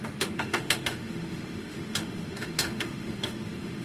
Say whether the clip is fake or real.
fake